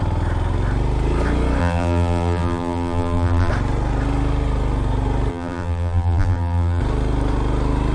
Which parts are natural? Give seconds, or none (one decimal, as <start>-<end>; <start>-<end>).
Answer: 0.0-1.6; 3.5-5.3; 6.8-7.9